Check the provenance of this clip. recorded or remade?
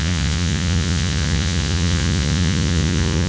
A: remade